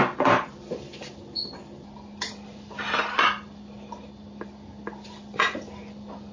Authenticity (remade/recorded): remade